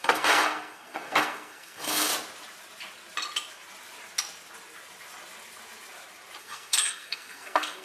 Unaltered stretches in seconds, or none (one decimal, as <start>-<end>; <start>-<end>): 2.1-6.4